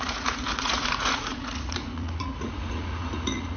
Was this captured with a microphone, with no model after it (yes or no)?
no